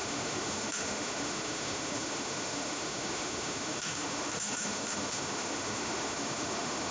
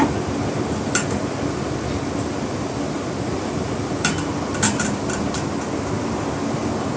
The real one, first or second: second